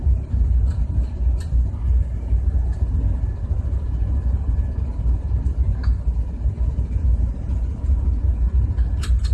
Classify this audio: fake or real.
real